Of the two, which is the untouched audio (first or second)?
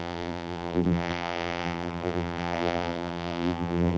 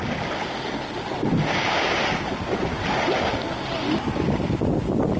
second